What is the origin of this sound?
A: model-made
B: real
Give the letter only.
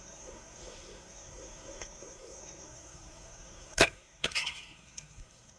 A